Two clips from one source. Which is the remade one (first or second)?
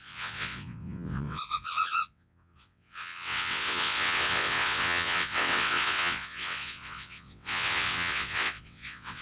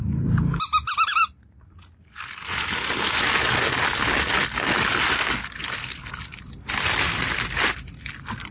first